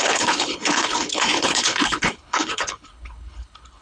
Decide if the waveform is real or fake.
fake